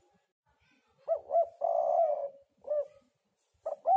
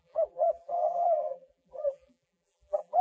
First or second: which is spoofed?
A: second